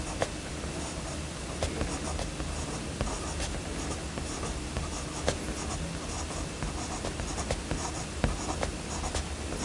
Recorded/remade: recorded